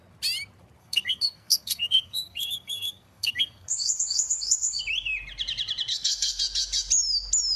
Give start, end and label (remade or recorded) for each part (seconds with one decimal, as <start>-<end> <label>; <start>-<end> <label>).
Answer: 0.0-0.8 recorded; 0.8-4.8 remade; 4.8-5.9 recorded; 5.9-6.4 remade; 6.4-7.6 recorded